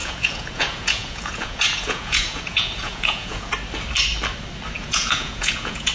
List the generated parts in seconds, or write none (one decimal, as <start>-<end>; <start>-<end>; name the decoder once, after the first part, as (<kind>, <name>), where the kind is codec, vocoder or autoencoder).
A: 0.0-3.5 (vocoder, Vocos); 4.8-5.9